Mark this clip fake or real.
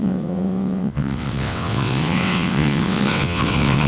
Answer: fake